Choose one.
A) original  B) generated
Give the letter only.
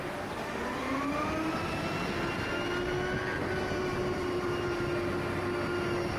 A